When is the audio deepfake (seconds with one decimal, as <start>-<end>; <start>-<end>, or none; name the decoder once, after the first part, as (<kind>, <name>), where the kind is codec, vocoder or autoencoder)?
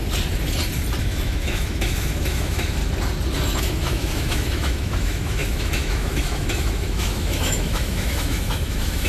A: 1.0-2.8 (autoencoder, DAC-VAE); 3.6-9.1